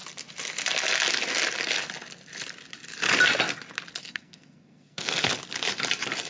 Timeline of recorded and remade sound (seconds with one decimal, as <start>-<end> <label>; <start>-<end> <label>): 0.0-4.0 recorded; 4.0-5.3 remade; 5.3-6.3 recorded